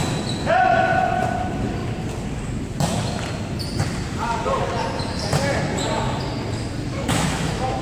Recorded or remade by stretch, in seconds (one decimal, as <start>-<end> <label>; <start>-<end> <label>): 0.0-6.9 recorded; 6.9-7.8 remade